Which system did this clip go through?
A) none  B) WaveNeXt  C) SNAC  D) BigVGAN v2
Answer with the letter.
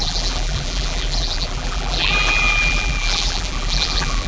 D